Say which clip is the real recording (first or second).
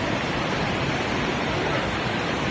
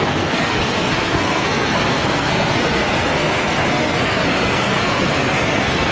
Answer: first